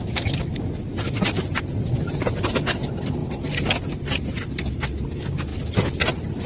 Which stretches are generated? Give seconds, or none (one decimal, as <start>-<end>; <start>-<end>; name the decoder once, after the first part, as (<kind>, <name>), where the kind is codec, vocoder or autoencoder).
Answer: none